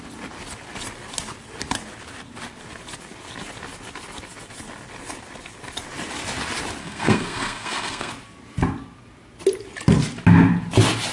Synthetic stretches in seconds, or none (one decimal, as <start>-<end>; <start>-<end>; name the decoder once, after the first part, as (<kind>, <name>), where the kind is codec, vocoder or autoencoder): 6.8-8.1 (codec, SNAC)

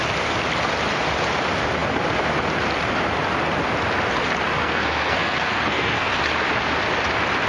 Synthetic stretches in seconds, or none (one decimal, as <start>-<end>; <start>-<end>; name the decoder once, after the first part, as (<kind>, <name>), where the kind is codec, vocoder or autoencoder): 4.6-6.2 (codec, SNAC)